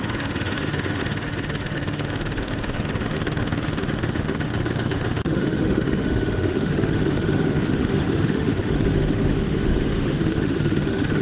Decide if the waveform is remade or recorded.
remade